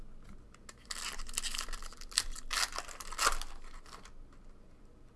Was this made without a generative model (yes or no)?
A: yes